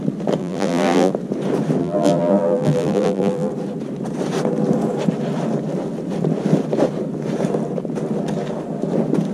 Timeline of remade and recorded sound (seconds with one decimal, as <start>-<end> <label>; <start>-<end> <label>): 0.0-0.4 recorded; 0.4-1.1 remade; 1.1-1.8 recorded; 1.8-3.5 remade; 3.5-9.3 recorded